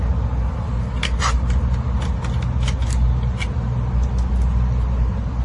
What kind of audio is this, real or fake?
real